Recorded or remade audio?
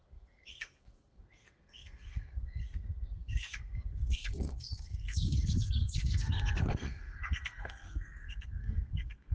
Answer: remade